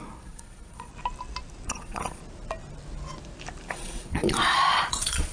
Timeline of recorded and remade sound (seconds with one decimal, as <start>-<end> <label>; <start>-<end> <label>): 0.0-0.9 remade; 0.9-1.7 recorded; 1.7-2.2 remade; 2.2-3.7 recorded; 3.7-5.3 remade